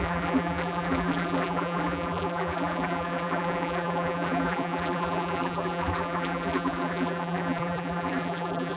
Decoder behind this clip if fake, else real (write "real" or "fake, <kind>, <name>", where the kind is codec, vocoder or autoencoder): fake, vocoder, BigVGAN v2